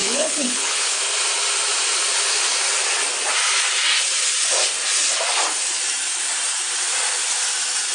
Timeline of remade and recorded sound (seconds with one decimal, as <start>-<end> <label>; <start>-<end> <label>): 0.0-1.0 remade; 1.0-7.9 recorded